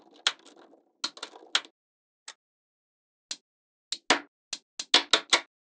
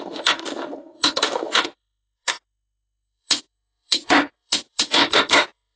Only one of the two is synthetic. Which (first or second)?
second